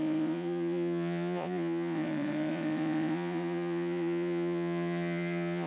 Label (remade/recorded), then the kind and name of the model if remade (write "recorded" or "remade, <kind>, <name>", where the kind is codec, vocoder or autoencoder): remade, vocoder, Vocos